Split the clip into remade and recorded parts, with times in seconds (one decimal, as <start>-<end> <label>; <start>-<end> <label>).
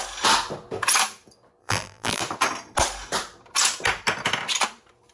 0.0-1.6 recorded; 1.6-2.2 remade; 2.2-5.1 recorded